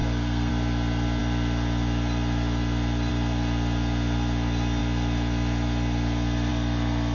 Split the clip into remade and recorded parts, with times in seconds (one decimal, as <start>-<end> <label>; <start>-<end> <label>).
0.0-0.5 remade; 0.5-7.1 recorded